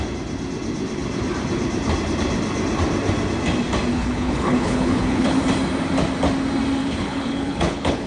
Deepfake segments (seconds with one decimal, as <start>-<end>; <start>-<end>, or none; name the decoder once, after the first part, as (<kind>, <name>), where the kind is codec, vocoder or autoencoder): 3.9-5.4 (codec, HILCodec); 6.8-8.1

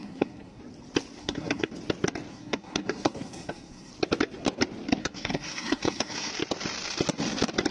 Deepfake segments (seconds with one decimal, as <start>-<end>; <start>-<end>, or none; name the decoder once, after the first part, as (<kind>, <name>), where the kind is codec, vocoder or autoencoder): 0.0-0.6 (codec, SNAC); 1.2-1.7; 2.3-3.9; 5.0-6.3

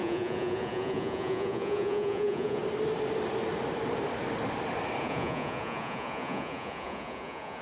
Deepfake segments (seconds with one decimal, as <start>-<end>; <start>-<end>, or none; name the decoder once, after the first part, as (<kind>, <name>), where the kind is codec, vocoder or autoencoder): 0.0-2.6 (vocoder, Vocos); 5.0-7.6

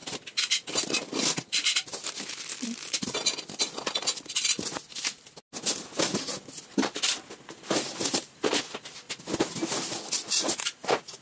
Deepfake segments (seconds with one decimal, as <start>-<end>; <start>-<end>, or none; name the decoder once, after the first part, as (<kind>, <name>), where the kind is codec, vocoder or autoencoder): none